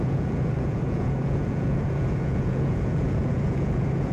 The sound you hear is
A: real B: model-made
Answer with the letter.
B